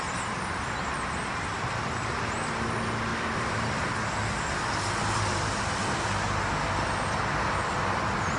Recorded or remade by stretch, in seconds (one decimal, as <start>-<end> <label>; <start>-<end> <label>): 0.0-3.1 recorded; 3.1-3.9 remade; 3.9-5.0 recorded; 5.0-6.0 remade; 6.0-8.4 recorded